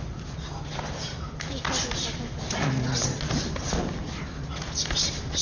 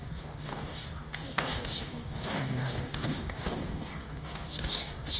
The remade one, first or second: second